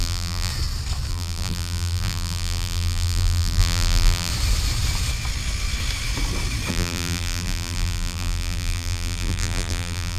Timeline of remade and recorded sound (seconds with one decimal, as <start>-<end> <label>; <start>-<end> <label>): 0.0-0.5 remade; 0.5-1.1 recorded; 1.1-4.3 remade; 4.3-6.7 recorded; 6.7-10.2 remade